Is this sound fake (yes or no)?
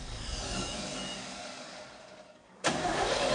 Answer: yes